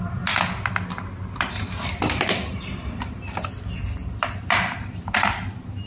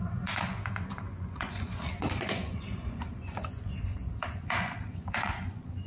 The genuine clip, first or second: first